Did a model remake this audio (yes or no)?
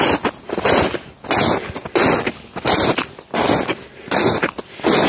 no